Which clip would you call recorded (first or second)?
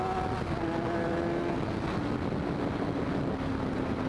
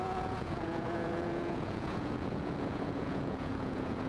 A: first